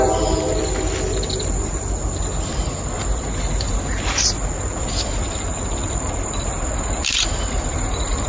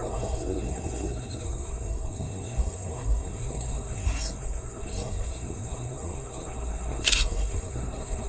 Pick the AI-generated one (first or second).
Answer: second